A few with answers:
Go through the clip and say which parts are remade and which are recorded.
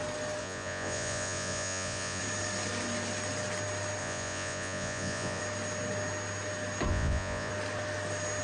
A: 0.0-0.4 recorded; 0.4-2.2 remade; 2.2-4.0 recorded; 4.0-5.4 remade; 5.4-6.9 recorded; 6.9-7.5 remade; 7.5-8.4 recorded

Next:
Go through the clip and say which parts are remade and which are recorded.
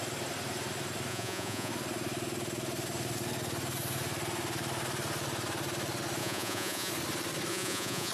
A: 0.0-1.1 recorded; 1.1-1.7 remade; 1.7-6.2 recorded; 6.2-6.9 remade; 6.9-7.5 recorded; 7.5-8.1 remade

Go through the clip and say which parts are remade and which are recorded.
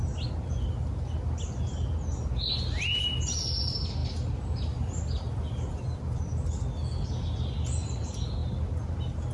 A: 0.0-9.3 recorded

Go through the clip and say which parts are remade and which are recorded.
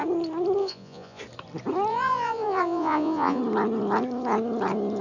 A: 0.0-0.6 recorded; 0.6-1.2 remade; 1.2-1.9 recorded; 1.9-3.4 remade; 3.4-5.0 recorded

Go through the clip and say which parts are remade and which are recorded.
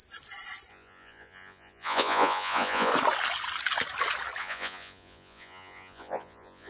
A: 0.0-0.7 recorded; 0.7-2.9 remade; 2.9-4.4 recorded; 4.4-6.7 remade